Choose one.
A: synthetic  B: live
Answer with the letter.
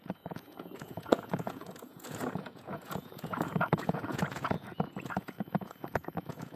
A